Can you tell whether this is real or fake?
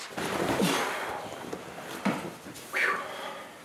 real